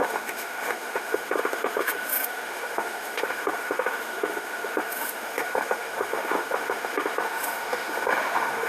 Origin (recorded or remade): remade